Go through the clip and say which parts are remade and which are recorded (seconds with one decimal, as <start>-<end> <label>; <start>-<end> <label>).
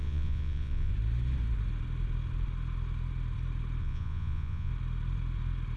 0.0-0.9 remade; 0.9-3.8 recorded; 3.8-4.7 remade; 4.7-5.8 recorded